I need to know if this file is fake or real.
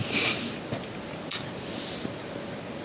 real